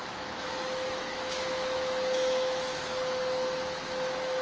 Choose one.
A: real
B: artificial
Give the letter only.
B